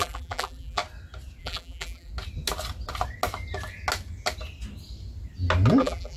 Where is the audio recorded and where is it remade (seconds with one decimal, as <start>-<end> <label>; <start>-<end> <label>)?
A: 0.0-0.8 remade; 0.8-1.4 recorded; 1.4-2.1 remade; 2.1-5.8 recorded; 5.8-6.2 remade